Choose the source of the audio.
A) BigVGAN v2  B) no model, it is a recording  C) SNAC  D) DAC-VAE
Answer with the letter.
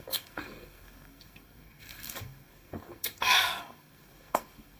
C